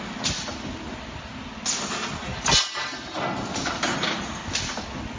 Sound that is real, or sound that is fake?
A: real